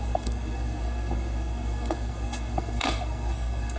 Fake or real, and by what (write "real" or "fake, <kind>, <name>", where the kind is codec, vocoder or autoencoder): fake, codec, SNAC